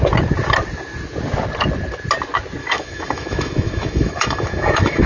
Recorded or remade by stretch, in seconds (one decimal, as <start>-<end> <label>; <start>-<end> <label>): 0.0-2.6 recorded; 2.6-5.1 remade